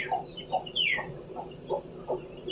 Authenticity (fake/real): real